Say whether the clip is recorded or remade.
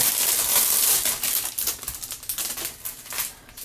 recorded